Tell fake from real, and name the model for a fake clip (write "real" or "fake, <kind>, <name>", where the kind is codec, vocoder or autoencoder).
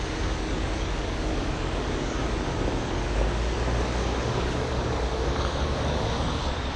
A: fake, codec, DAC